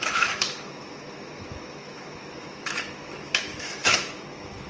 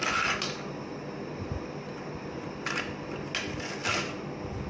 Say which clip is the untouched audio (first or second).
second